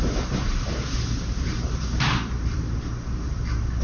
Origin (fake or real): fake